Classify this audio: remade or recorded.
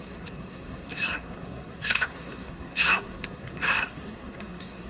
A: remade